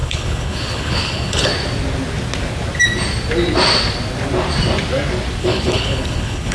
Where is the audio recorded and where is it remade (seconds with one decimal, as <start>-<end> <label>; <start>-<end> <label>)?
0.0-1.5 remade; 1.5-5.4 recorded; 5.4-6.5 remade